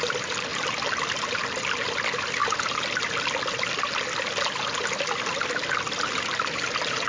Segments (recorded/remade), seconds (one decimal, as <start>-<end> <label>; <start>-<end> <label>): 0.0-7.1 recorded